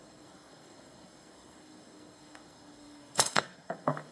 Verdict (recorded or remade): remade